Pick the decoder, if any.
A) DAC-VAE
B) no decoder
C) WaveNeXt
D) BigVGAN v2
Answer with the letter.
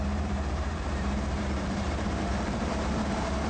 D